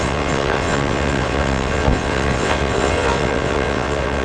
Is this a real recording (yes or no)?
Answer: no